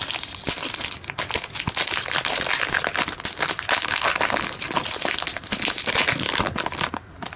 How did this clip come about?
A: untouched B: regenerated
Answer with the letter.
A